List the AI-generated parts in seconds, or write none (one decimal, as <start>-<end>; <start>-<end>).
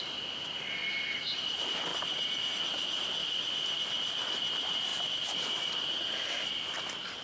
1.9-2.5; 3.2-3.7